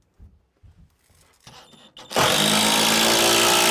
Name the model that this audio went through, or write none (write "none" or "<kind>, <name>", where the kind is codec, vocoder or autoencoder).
none